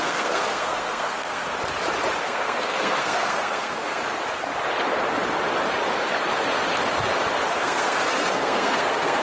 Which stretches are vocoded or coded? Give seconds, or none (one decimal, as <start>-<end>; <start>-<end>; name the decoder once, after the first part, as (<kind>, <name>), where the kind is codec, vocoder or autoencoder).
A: 0.0-1.5 (codec, SNAC); 2.2-4.0; 7.5-9.2